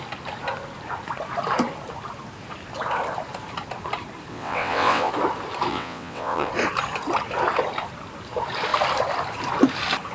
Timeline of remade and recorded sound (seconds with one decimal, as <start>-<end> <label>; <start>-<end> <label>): 0.0-4.3 recorded; 4.3-5.1 remade; 5.1-5.7 recorded; 5.7-6.5 remade; 6.5-10.1 recorded

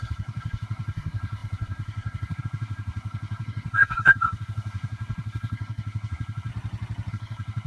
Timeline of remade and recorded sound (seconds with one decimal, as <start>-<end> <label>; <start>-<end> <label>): 0.0-6.5 remade; 6.5-7.1 recorded; 7.1-7.7 remade